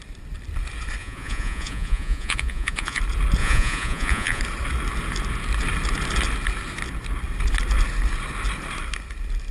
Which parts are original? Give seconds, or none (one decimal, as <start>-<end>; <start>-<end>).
0.0-1.0; 3.0-3.4; 4.4-9.5